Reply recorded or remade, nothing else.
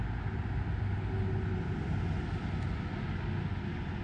recorded